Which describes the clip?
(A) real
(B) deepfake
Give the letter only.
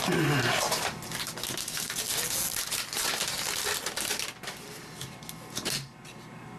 A